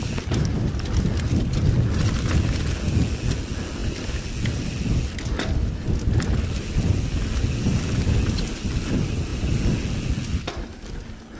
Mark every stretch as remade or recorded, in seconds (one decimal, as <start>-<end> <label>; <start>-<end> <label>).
0.0-11.4 recorded